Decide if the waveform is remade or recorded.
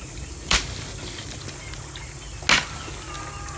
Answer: recorded